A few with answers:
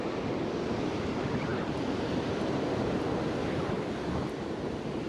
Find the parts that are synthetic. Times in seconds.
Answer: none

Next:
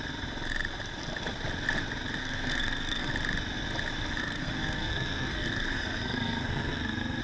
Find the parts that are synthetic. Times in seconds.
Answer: 2.2-3.1 (codec, SNAC); 4.2-7.2